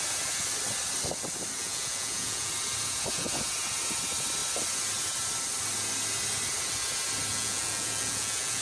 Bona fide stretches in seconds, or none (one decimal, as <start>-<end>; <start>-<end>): 0.0-1.6; 2.5-7.3